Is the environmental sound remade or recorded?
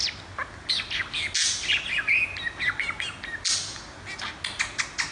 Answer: recorded